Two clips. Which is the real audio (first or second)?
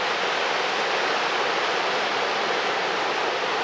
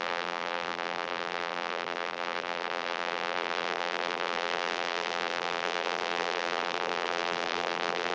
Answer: first